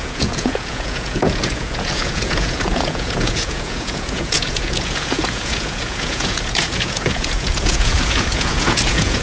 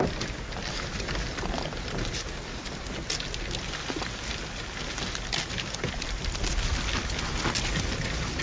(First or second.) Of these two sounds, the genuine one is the second